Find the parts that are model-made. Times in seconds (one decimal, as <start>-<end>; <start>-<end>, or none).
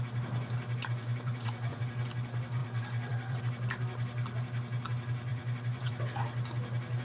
0.8-1.8; 2.6-3.4; 5.3-6.0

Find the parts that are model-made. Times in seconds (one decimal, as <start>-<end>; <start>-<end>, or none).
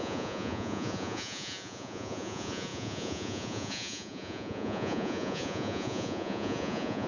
0.0-7.1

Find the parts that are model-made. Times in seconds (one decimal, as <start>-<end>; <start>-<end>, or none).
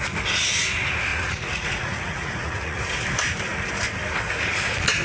1.1-2.8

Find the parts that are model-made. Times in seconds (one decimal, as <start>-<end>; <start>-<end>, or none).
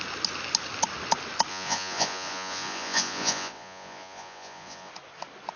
1.5-4.9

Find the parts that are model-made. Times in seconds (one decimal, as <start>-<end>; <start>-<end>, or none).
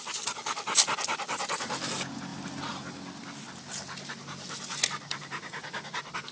none